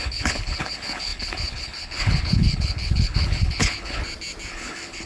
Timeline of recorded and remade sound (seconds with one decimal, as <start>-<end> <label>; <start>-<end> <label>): 0.0-4.0 remade; 4.0-4.5 recorded; 4.5-5.1 remade